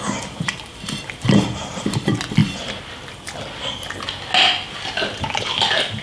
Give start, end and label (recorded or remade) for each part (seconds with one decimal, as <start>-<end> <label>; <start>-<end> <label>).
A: 0.0-6.0 recorded